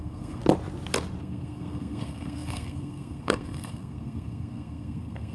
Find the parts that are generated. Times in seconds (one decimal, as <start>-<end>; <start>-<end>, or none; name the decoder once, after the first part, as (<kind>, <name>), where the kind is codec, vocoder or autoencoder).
0.0-0.4 (codec, SNAC); 1.2-5.3